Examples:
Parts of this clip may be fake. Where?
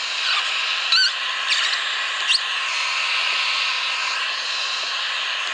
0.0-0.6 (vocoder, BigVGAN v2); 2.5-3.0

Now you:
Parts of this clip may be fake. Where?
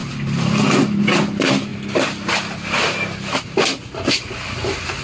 0.0-1.0 (vocoder, BigVGAN v2)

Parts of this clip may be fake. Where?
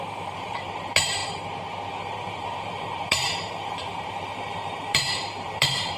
0.0-1.2 (vocoder, BigVGAN v2); 1.9-6.0